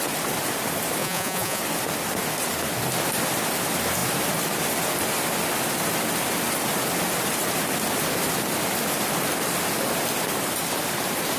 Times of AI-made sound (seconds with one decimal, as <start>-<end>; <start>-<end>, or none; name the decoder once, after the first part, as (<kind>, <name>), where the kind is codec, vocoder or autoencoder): 1.0-1.6 (vocoder, Vocos)